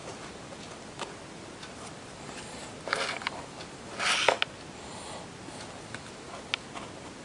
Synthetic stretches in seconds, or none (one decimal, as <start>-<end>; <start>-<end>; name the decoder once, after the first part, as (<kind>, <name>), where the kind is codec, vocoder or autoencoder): none